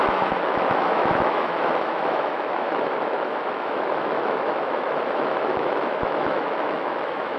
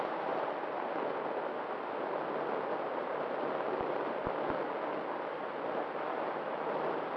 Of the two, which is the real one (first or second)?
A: second